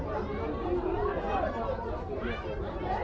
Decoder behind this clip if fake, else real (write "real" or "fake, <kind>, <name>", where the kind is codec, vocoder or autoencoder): fake, vocoder, BigVGAN v2